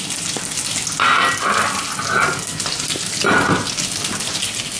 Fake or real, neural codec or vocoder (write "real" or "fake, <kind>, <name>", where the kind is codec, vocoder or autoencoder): real